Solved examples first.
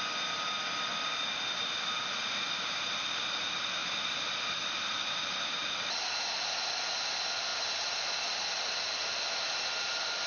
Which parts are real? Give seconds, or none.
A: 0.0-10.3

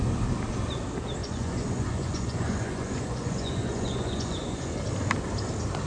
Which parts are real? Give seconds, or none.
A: 0.0-1.2; 4.7-5.9

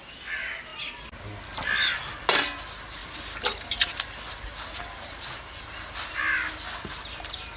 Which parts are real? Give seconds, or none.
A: 0.0-7.6

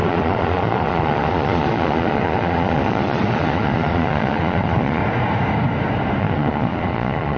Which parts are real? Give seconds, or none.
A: 5.0-6.2

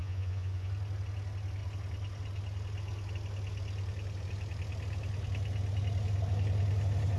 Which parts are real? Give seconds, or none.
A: 0.7-7.2

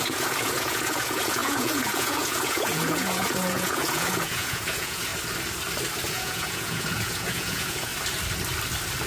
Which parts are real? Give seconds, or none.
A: 5.1-6.1; 7.9-9.1

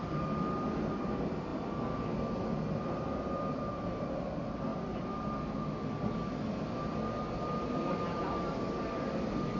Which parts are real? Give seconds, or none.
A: 0.0-9.6

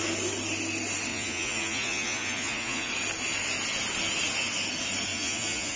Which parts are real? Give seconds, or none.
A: 0.0-1.1; 2.9-5.1